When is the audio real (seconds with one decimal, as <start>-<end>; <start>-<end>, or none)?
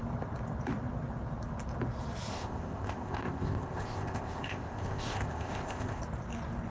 0.0-2.3; 6.0-6.7